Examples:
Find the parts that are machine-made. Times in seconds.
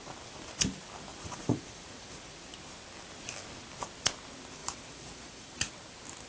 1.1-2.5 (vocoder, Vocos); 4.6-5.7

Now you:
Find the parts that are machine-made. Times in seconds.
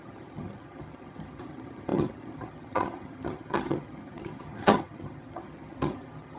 0.0-6.4 (vocoder, HiFi-GAN)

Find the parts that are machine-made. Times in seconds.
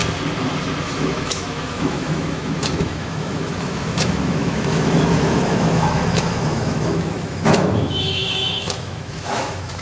0.8-9.8 (autoencoder, DAC-VAE)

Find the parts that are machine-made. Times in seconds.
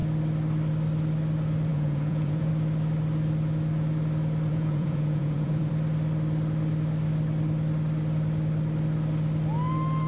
1.7-2.5 (vocoder, Vocos); 4.5-5.7